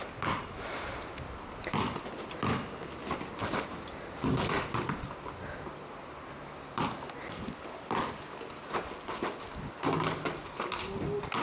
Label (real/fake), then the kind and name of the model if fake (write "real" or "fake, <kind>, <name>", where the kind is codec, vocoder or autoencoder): real